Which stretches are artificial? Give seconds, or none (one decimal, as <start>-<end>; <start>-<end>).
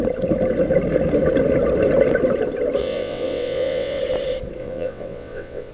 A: 2.8-4.0; 4.6-5.7